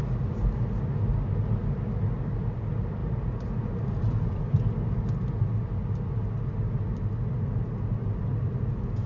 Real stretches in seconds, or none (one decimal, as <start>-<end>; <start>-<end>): 0.0-3.0; 4.6-9.1